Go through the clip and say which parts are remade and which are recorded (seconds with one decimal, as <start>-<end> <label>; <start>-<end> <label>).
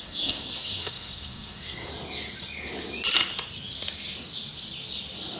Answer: 0.0-1.9 remade; 1.9-5.4 recorded